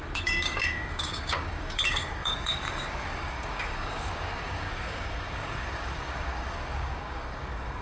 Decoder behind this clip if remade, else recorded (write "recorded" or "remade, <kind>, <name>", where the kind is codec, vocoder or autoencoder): remade, codec, DAC